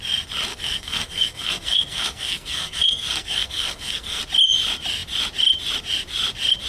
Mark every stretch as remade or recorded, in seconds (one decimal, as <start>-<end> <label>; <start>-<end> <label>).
0.0-0.5 recorded; 0.5-4.2 remade; 4.2-6.7 recorded